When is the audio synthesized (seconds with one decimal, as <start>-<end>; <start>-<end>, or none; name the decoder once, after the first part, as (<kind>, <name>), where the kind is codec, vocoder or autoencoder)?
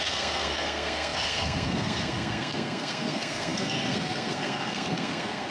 0.0-5.5 (codec, SNAC)